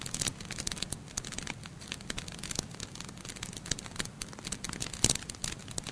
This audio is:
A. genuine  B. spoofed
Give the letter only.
A